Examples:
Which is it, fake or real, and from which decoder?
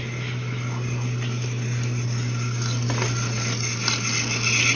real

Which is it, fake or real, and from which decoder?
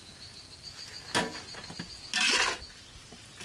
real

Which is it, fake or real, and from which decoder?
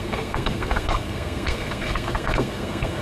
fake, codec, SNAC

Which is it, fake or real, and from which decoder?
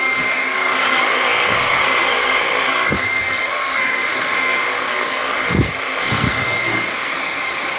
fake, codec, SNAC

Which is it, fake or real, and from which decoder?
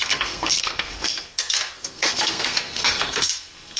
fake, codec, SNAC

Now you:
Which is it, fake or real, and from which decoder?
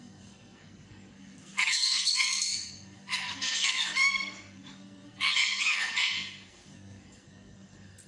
fake, codec, SNAC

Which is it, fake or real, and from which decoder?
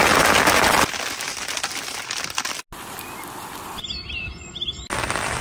real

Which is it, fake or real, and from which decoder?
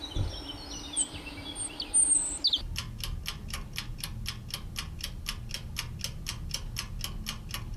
real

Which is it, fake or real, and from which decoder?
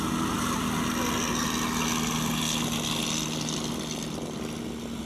real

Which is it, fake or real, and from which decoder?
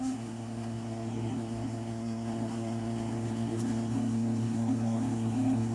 fake, codec, SNAC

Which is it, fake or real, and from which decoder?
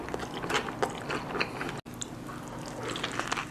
real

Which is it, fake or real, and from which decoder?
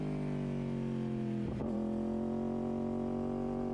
real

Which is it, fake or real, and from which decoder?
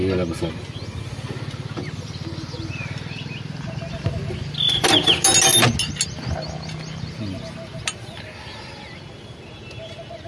real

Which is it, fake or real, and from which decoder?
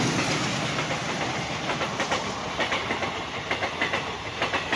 real